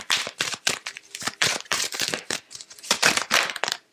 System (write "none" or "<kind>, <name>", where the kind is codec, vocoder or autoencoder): vocoder, BigVGAN v2